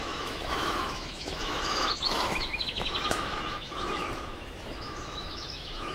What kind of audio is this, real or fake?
fake